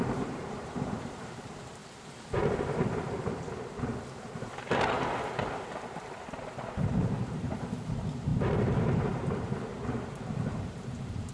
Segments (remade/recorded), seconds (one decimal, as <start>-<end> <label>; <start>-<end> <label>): 0.0-1.8 remade; 1.8-6.6 recorded; 6.6-9.7 remade; 9.7-10.2 recorded; 10.2-11.3 remade